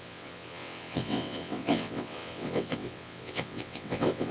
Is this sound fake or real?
fake